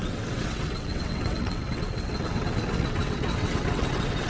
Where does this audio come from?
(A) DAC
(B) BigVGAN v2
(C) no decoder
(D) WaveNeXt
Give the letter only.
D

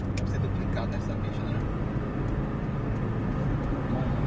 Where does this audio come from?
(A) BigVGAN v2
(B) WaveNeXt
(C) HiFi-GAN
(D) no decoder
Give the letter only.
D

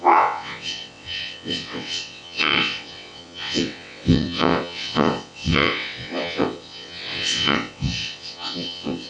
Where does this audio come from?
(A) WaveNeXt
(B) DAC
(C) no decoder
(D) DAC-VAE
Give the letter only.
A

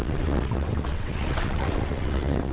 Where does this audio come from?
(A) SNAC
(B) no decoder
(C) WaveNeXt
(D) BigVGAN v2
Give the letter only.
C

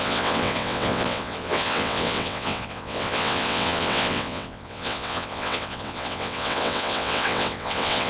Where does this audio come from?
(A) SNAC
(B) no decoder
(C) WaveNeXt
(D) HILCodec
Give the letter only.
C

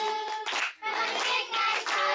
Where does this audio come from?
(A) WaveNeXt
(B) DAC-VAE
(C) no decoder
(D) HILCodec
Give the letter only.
C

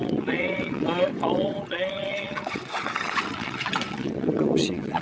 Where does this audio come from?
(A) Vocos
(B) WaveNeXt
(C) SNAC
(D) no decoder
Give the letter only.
B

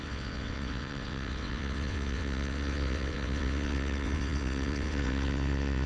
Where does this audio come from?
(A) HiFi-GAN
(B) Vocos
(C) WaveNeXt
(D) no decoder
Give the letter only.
C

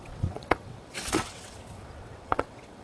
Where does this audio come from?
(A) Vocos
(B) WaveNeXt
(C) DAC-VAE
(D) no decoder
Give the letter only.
B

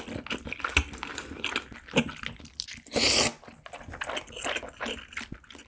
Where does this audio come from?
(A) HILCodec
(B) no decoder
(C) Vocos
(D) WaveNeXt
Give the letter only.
B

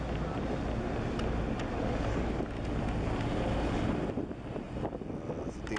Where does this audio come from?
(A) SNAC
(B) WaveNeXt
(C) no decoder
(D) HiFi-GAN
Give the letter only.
C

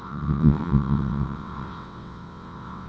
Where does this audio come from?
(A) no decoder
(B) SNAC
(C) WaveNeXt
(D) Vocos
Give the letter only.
C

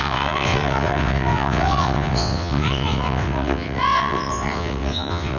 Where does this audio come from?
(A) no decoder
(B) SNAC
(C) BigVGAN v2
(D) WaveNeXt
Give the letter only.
D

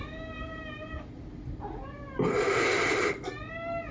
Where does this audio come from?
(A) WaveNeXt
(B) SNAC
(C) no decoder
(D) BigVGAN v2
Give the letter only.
C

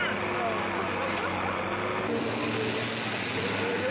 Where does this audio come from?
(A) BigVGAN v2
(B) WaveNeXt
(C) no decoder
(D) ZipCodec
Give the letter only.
C